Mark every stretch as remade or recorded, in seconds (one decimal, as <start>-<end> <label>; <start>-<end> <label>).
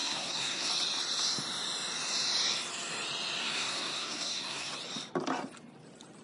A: 0.0-0.7 remade; 0.7-3.4 recorded; 3.4-4.7 remade; 4.7-6.2 recorded